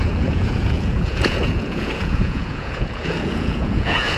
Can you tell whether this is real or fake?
fake